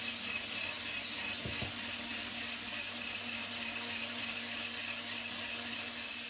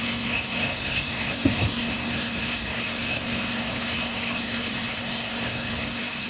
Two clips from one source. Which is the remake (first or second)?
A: second